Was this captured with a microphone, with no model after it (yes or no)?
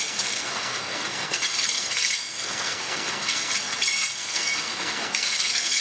no